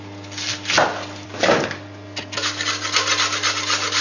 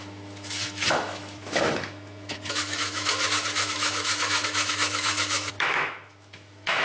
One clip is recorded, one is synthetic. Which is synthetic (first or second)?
second